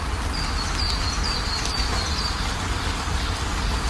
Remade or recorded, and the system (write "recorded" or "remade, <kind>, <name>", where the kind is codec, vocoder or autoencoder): recorded